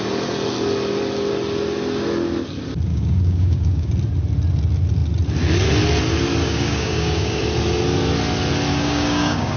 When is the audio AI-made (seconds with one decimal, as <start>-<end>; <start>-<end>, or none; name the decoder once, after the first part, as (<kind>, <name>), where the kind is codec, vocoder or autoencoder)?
2.9-3.9 (codec, DAC); 6.4-7.4; 8.7-9.6